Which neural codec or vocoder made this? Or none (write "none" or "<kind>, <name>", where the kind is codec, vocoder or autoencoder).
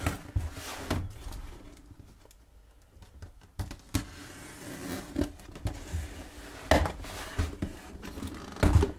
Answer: none